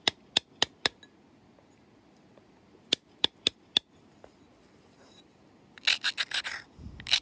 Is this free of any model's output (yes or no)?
yes